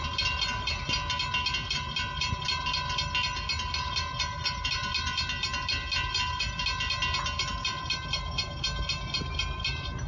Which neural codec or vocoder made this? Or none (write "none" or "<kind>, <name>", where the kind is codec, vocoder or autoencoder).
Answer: none